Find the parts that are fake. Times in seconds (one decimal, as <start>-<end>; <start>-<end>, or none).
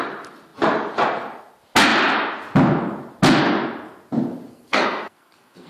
4.5-5.7